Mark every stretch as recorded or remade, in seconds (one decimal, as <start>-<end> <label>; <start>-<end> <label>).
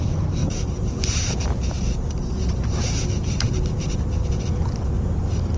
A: 0.0-0.4 recorded; 0.4-3.8 remade; 3.8-5.6 recorded